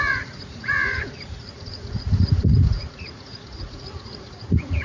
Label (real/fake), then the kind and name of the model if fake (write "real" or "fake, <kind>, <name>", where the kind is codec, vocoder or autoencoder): fake, vocoder, Vocos